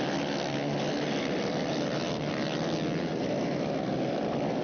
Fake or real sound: real